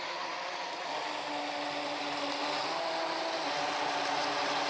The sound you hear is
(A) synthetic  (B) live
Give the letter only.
B